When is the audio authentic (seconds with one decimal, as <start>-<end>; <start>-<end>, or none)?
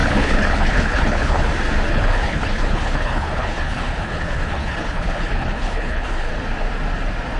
1.5-1.9; 6.3-7.4